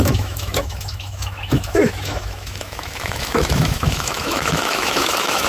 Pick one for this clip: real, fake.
fake